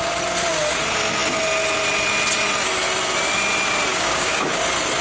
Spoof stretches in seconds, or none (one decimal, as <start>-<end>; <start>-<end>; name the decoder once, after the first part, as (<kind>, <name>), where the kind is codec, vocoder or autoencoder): 3.9-4.5 (codec, DAC)